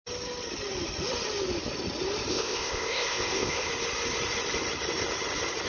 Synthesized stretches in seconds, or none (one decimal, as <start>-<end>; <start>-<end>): 2.3-3.7